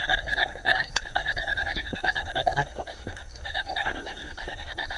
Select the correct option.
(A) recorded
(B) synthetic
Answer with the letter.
B